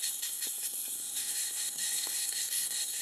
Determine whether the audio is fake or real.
fake